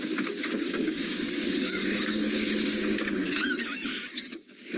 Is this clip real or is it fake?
fake